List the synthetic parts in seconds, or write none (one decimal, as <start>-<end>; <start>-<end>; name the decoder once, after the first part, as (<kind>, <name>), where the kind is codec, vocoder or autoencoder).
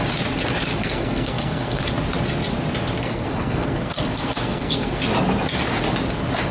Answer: 0.8-1.8 (codec, SNAC); 3.0-5.0